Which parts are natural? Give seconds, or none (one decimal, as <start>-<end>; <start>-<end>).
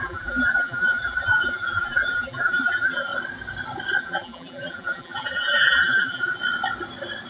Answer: 3.1-4.0; 6.4-7.3